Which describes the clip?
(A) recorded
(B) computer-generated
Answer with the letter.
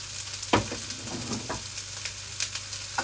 A